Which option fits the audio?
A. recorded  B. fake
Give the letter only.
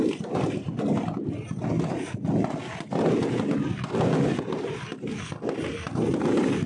A